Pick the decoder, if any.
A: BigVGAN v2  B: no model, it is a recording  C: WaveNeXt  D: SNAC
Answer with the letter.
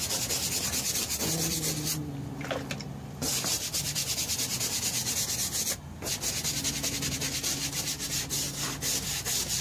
B